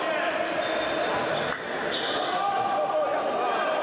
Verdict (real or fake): real